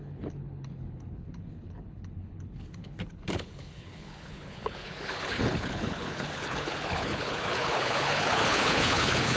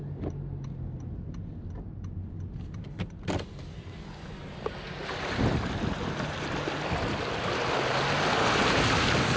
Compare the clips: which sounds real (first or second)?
second